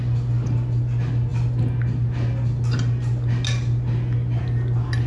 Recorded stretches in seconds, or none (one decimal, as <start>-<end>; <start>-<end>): 0.0-5.1